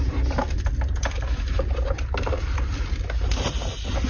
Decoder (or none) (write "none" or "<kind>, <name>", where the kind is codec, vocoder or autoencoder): none